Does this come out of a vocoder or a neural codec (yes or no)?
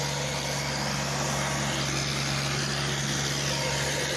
no